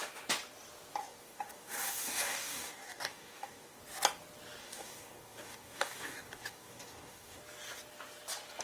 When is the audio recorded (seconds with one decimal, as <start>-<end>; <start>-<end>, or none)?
0.0-1.0; 3.8-4.6; 7.4-8.6